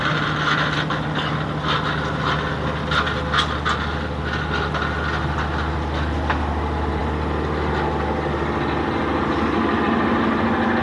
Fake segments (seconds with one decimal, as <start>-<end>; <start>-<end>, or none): none